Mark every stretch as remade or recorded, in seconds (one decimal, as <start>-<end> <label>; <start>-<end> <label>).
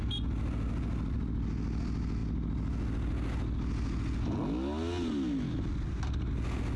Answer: 0.0-6.8 recorded